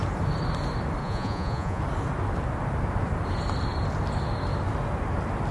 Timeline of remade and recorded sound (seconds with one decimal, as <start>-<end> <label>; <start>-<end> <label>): 0.0-1.0 recorded; 1.0-1.8 remade; 1.8-5.5 recorded